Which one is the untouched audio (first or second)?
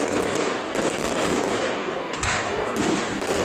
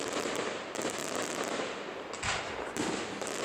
second